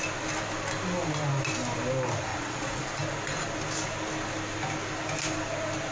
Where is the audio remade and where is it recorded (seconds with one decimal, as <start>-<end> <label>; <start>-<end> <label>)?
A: 0.0-2.3 recorded; 2.3-2.9 remade; 2.9-5.9 recorded